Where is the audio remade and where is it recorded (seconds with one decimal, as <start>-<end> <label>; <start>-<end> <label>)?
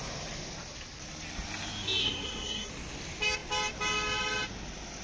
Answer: 0.0-2.0 recorded; 2.0-2.7 remade; 2.7-5.0 recorded